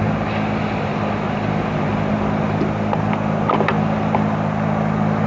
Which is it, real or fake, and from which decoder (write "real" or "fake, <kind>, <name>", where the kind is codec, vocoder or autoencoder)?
real